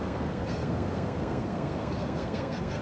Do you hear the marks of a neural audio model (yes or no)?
yes